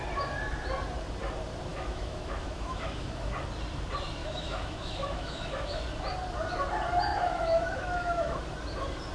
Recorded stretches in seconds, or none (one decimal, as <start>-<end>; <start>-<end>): 0.0-1.7; 3.3-4.2; 5.8-7.1; 8.4-9.1